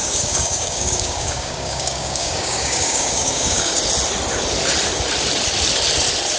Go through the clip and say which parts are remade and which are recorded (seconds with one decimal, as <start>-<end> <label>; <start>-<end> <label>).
0.0-3.8 remade; 3.8-6.4 recorded